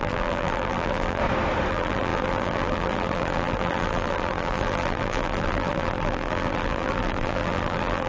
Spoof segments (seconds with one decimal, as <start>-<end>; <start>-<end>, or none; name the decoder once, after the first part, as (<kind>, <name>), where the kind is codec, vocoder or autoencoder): 0.0-1.2 (vocoder, BigVGAN v2); 1.7-8.1